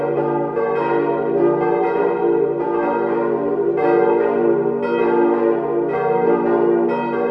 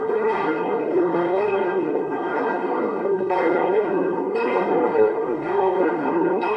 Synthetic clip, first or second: second